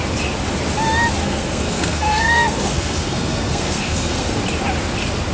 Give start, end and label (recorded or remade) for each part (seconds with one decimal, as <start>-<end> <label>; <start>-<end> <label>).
0.0-1.2 recorded; 1.2-4.4 remade; 4.4-5.3 recorded